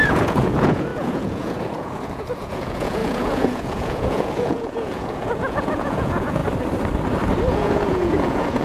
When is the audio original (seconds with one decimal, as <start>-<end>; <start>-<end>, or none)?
6.4-7.5